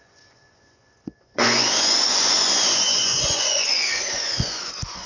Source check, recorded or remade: remade